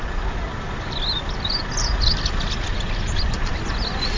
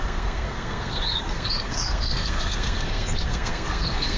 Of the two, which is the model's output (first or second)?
second